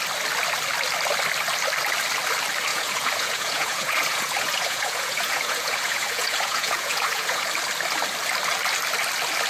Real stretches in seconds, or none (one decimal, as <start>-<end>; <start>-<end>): 0.0-2.7; 7.5-9.5